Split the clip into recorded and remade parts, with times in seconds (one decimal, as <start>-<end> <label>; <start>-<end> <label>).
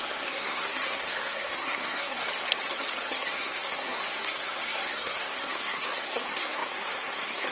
0.0-2.3 remade; 2.3-3.0 recorded; 3.0-7.5 remade